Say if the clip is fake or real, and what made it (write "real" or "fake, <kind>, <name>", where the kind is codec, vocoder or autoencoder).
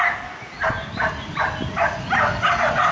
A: real